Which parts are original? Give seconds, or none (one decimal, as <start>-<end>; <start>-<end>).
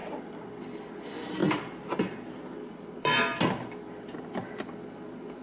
0.0-5.4